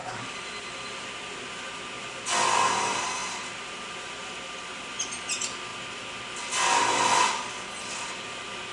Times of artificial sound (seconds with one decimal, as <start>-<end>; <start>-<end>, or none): 0.0-0.5; 3.2-4.7; 5.7-6.2